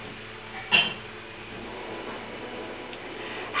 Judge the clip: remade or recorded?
recorded